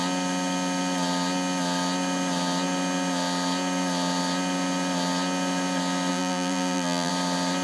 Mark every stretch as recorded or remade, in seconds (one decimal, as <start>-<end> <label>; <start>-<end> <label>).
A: 0.0-6.1 recorded; 6.1-7.1 remade; 7.1-7.6 recorded